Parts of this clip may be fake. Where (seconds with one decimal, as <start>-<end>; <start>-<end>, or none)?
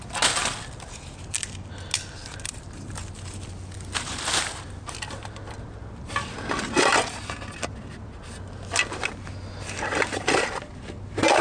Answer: none